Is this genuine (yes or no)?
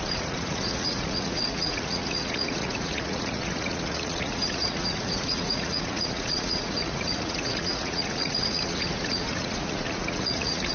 no